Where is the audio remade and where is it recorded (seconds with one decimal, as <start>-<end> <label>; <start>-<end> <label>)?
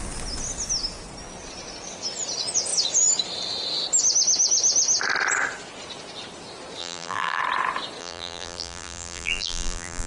0.0-6.8 recorded; 6.8-7.4 remade; 7.4-8.0 recorded; 8.0-10.1 remade